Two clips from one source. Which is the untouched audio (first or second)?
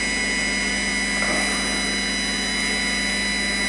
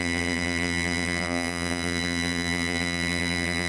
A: first